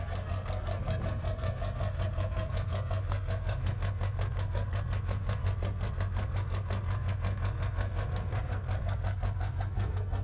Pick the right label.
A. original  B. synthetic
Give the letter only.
B